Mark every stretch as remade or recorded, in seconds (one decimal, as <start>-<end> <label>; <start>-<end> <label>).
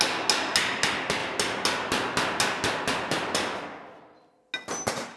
0.0-5.2 recorded